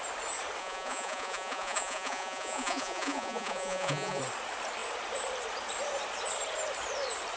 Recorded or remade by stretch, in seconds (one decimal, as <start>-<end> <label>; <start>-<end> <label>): 0.0-0.6 recorded; 0.6-4.2 remade; 4.2-7.4 recorded